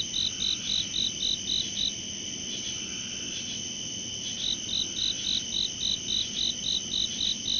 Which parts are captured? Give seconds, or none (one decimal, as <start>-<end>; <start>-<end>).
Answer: 0.0-7.6